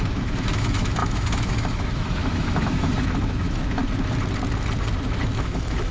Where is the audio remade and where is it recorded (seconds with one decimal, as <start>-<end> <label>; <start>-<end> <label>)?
0.0-3.8 remade; 3.8-5.1 recorded; 5.1-5.9 remade